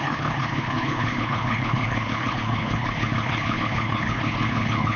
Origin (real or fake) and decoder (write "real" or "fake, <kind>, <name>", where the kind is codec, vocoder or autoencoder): fake, codec, HILCodec